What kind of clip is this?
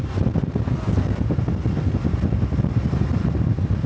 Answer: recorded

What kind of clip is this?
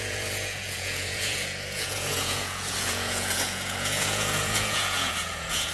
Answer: remade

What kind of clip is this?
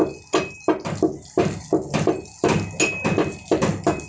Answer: recorded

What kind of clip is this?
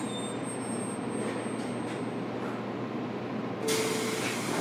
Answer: recorded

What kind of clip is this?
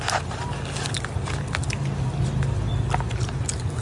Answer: recorded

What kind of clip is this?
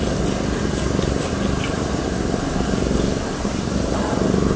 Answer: recorded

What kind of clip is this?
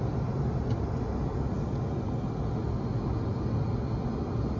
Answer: recorded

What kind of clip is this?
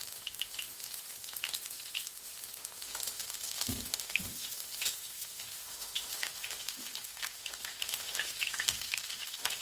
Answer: remade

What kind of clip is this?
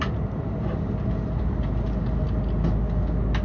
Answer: recorded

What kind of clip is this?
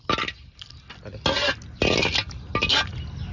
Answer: recorded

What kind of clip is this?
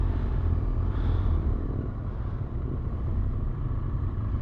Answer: remade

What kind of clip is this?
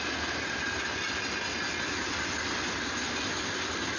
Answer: recorded